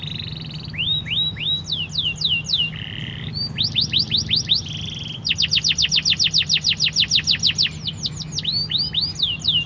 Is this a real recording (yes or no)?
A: yes